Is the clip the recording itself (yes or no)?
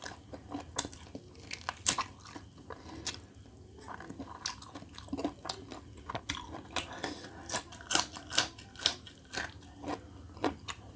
yes